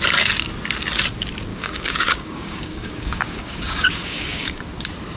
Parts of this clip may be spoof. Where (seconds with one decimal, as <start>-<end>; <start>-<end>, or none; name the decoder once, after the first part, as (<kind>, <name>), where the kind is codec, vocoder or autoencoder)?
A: 1.5-4.6 (codec, DAC)